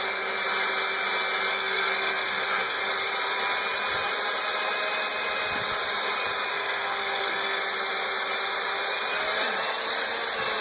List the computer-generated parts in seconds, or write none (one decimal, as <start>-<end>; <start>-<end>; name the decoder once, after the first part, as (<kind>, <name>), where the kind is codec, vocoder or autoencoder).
1.5-2.8 (codec, SNAC); 6.5-7.6